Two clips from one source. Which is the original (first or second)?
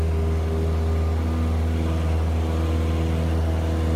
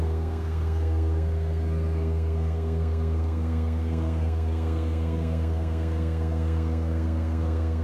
first